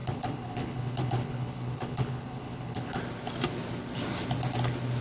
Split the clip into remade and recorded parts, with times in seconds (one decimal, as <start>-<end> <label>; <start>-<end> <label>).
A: 0.0-3.0 remade; 3.0-5.0 recorded